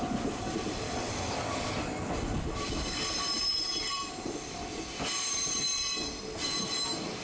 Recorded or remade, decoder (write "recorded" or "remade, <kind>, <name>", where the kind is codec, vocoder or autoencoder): recorded